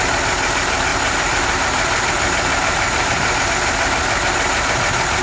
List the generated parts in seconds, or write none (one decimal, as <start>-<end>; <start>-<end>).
0.9-3.5